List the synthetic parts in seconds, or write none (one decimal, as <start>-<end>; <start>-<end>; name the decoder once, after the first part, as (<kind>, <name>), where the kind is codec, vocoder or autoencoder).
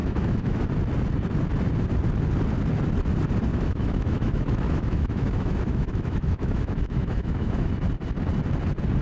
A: 0.0-0.6 (autoencoder, DAC-VAE); 3.5-7.7